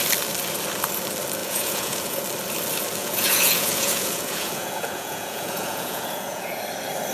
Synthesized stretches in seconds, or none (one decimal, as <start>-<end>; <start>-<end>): 1.4-2.2; 3.0-6.6